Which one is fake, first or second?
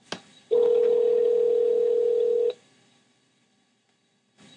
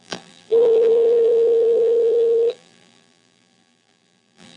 second